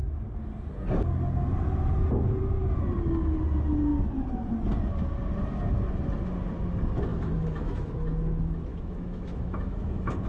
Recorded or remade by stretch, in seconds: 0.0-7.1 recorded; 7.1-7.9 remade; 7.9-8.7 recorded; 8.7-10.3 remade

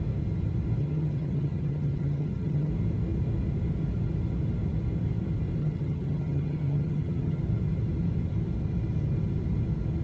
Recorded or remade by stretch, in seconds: 0.0-0.8 recorded; 0.8-2.7 remade; 2.7-5.6 recorded; 5.6-7.4 remade; 7.4-10.0 recorded